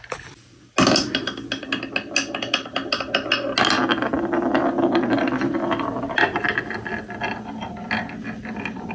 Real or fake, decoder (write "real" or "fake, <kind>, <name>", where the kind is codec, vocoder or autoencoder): real